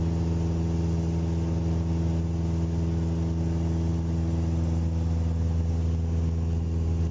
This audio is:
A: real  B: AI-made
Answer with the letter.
A